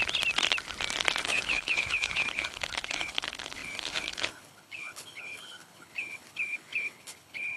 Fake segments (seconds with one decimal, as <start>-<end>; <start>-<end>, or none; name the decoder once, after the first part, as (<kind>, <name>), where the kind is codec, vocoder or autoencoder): 1.2-7.6 (codec, HILCodec)